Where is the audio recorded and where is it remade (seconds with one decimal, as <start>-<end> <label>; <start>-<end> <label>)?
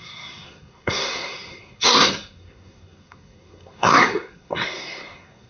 0.0-5.5 remade